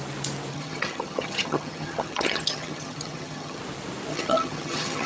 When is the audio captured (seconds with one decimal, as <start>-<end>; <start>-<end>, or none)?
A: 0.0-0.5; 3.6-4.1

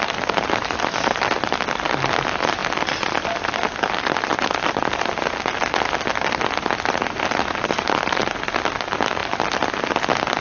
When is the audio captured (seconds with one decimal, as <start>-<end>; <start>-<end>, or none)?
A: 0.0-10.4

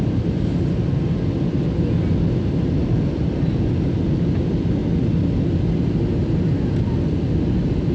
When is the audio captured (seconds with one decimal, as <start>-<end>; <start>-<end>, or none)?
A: 0.0-7.9